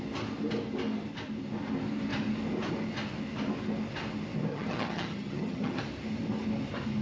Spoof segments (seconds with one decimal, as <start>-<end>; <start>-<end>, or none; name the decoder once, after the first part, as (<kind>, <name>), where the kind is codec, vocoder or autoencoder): 4.5-5.8 (vocoder, HiFi-GAN)

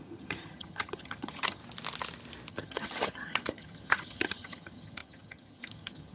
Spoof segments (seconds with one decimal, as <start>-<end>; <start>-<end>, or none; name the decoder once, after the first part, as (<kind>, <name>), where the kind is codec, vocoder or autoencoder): 0.0-1.6 (vocoder, HiFi-GAN); 2.5-6.1

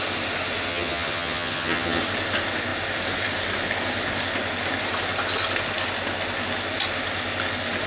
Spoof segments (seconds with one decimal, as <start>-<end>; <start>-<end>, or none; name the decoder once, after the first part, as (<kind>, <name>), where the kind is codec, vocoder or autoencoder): 0.7-2.0 (vocoder, HiFi-GAN)

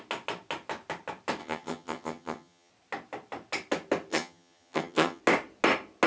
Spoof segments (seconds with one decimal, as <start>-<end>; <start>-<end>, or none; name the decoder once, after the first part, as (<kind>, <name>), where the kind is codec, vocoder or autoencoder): 1.4-2.7 (vocoder, HiFi-GAN); 4.1-5.2